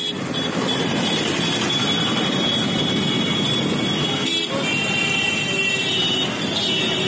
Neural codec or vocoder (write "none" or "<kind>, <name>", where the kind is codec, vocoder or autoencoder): none